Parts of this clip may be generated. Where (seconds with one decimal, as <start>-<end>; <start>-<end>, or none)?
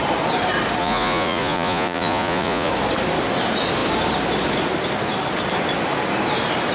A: 0.8-2.7